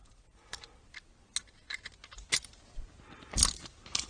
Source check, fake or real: real